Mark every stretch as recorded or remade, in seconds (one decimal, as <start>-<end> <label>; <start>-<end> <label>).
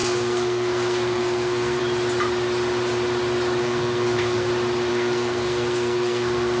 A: 0.0-1.8 remade; 1.8-3.6 recorded; 3.6-4.5 remade; 4.5-4.9 recorded; 4.9-6.6 remade